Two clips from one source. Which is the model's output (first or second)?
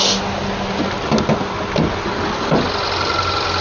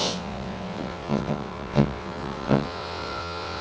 second